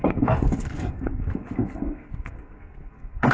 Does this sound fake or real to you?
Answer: fake